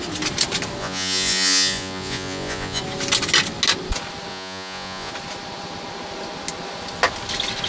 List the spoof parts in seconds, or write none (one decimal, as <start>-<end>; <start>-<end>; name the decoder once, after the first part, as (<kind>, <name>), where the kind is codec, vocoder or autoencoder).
0.8-2.8 (vocoder, Vocos); 4.3-5.1

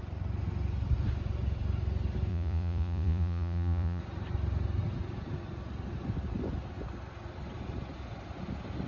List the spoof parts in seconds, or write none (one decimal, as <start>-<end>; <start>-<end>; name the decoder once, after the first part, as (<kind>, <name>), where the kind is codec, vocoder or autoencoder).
2.3-4.0 (vocoder, Vocos)